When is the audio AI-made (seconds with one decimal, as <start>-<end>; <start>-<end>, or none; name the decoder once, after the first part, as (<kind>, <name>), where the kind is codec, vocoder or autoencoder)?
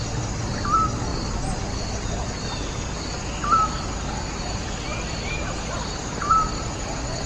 4.9-5.6 (vocoder, BigVGAN v2)